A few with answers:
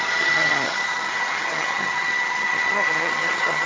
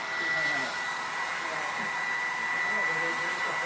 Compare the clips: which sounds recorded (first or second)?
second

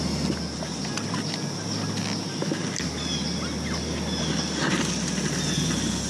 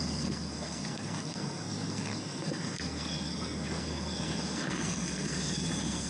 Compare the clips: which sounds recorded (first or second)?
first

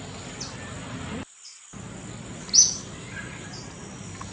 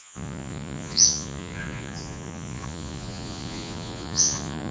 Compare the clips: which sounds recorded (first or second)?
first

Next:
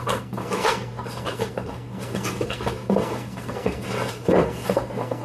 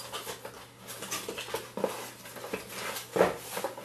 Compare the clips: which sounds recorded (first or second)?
second